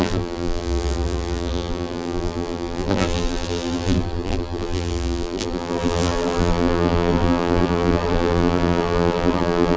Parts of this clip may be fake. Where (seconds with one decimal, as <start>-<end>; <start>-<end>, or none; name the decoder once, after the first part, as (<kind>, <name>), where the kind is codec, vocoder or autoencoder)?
0.0-9.8 (vocoder, BigVGAN v2)

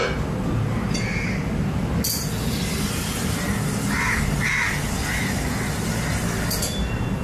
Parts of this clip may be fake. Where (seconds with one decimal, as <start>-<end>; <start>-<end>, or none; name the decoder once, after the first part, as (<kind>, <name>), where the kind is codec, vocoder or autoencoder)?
none